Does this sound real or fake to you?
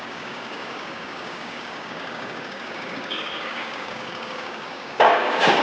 fake